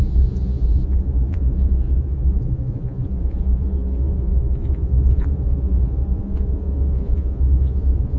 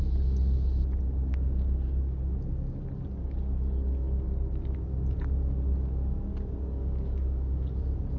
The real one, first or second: second